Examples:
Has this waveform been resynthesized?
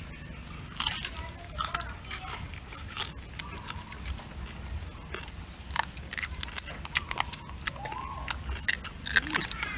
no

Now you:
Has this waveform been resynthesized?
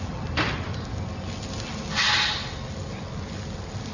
no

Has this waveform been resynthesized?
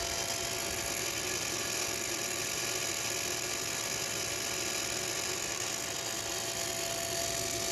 no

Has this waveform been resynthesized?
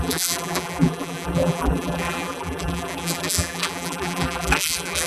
yes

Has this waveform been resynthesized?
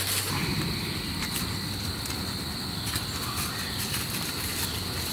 no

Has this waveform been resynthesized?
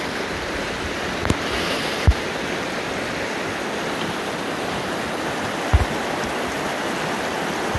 no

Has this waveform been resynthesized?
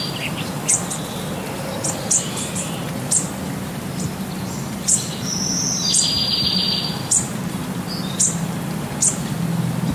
yes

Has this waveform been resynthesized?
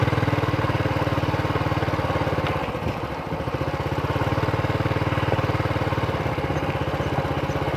no